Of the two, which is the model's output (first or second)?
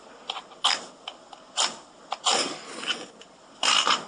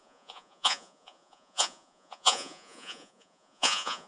second